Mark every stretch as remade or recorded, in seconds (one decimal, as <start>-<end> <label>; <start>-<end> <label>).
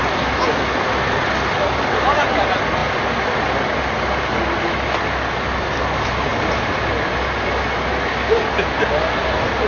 0.0-9.7 recorded